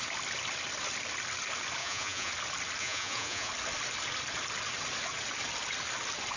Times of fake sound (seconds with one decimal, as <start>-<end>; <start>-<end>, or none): 1.8-2.3; 2.8-3.5